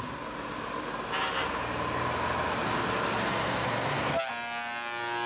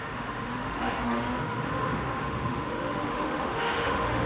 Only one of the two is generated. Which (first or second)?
second